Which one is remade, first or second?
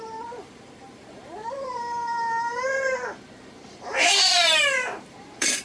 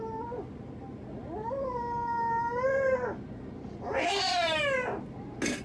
first